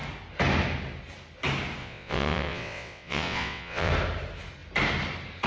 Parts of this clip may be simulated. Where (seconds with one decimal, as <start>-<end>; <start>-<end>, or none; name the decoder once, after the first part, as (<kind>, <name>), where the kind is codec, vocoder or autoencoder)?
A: 1.8-3.9 (vocoder, WaveNeXt)